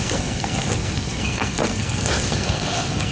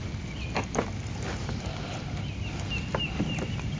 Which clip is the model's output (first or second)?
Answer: first